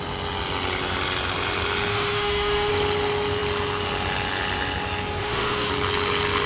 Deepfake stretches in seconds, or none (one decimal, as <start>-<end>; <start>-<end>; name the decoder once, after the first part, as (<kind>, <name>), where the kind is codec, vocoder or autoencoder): 1.9-2.7 (autoencoder, DAC-VAE); 5.2-5.7